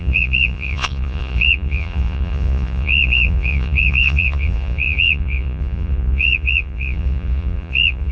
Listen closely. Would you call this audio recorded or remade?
remade